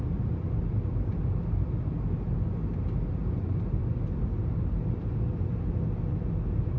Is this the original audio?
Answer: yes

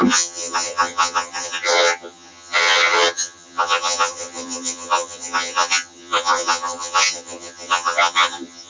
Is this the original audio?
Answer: no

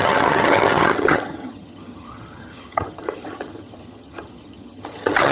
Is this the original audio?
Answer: no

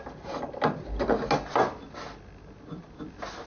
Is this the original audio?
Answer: yes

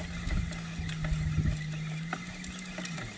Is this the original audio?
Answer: yes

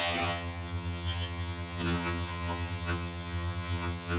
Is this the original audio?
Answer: no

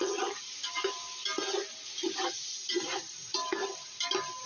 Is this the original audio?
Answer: yes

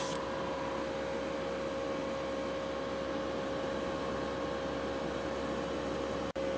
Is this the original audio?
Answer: yes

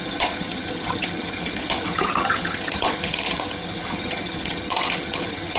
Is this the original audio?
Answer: no